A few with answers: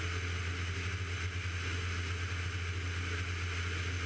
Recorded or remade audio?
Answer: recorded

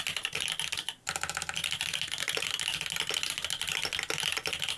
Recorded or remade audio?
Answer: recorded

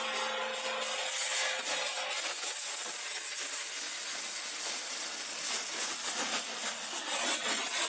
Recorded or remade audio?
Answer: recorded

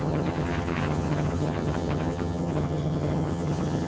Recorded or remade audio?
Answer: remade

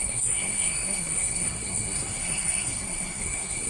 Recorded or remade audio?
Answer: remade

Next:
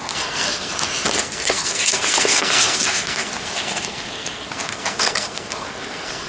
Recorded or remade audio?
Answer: remade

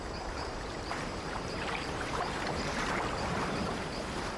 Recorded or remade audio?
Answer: remade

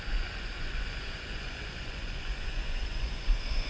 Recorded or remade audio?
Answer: remade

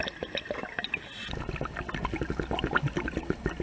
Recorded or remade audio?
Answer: recorded